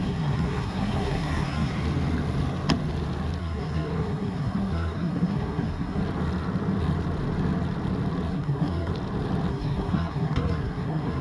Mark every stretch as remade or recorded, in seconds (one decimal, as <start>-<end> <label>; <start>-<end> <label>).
0.0-1.7 remade; 1.7-3.4 recorded; 3.4-6.0 remade; 6.0-8.3 recorded; 8.3-8.9 remade; 8.9-9.5 recorded; 9.5-11.2 remade